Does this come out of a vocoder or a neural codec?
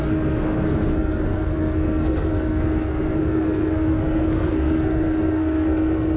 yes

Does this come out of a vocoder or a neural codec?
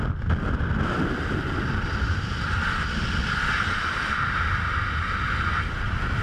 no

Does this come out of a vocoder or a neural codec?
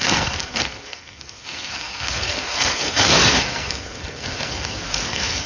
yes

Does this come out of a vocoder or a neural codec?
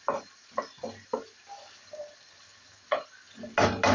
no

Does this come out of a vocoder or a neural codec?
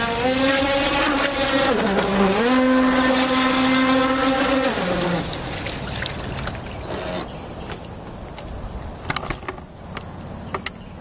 no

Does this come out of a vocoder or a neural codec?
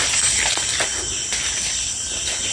no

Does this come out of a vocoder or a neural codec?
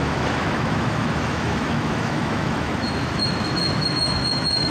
yes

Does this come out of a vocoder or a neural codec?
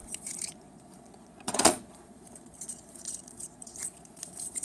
yes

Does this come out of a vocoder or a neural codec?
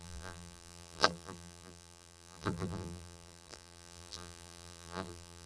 yes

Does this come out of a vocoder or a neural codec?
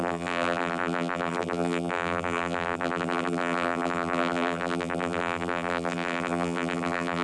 yes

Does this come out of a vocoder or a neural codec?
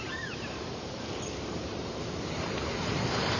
yes